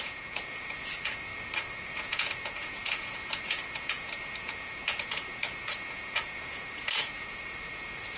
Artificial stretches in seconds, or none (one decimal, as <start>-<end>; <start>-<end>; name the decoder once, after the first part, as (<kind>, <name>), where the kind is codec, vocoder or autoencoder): 0.0-1.3 (vocoder, Vocos); 1.8-8.2